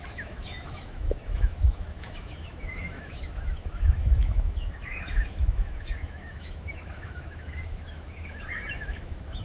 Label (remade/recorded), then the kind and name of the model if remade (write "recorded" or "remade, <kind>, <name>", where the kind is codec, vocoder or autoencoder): remade, autoencoder, DAC-VAE